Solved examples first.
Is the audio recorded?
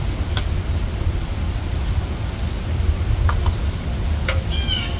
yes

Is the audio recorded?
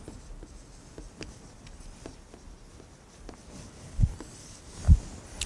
yes